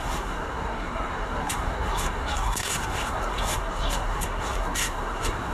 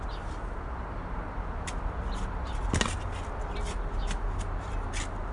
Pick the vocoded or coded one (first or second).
first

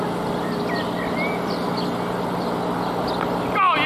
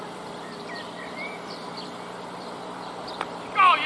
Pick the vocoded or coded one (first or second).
second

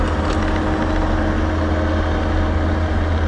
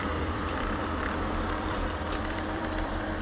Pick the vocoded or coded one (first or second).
second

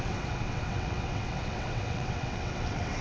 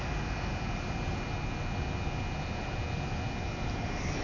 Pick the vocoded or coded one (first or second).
first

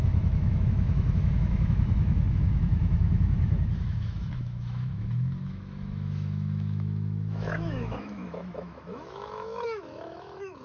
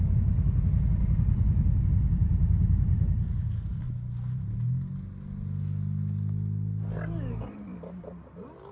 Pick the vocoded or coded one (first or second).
first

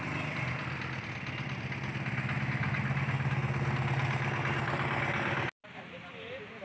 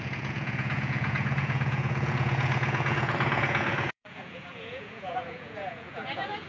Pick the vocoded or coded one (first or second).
second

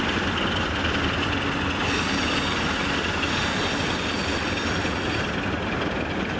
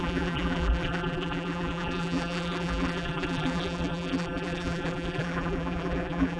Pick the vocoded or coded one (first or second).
second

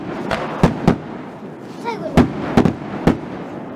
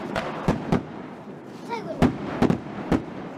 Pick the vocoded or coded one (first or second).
second